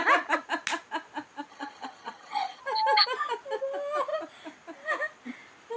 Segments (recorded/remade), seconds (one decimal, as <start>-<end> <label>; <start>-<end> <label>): 0.0-1.5 recorded; 1.5-2.6 remade; 2.6-5.8 recorded